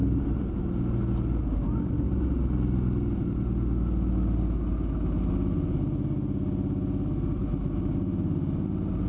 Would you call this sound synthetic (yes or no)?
no